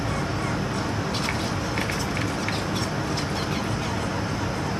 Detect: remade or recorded recorded